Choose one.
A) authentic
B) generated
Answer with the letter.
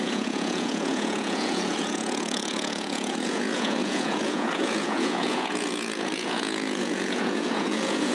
B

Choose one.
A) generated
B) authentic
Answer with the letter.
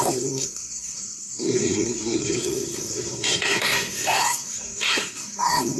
A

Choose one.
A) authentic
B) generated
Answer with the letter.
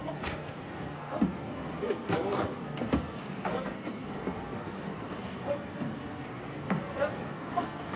B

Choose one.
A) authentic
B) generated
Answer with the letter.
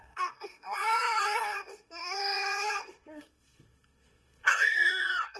B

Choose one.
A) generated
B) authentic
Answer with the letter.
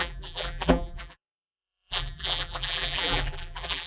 A